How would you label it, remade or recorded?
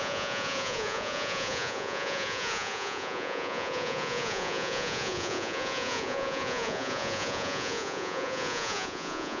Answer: remade